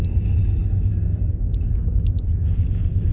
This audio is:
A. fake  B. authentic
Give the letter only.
B